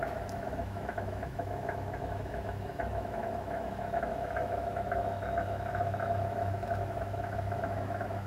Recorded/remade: remade